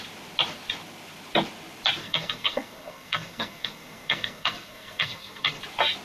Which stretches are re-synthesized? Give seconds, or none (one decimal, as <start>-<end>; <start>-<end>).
2.0-5.6